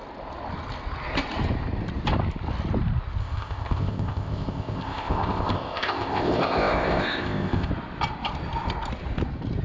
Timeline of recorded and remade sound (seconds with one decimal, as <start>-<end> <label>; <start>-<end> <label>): 0.0-3.2 recorded; 3.2-7.7 remade; 7.7-9.6 recorded